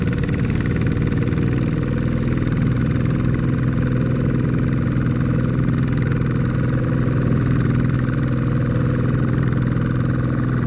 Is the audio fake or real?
real